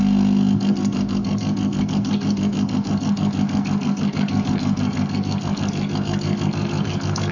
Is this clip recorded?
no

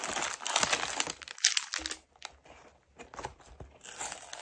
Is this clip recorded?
yes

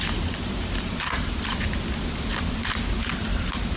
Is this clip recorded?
no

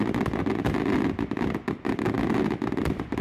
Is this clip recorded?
yes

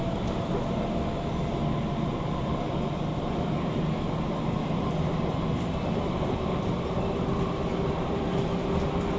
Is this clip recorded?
yes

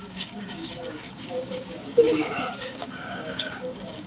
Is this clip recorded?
no